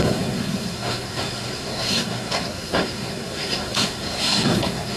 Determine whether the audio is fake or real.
fake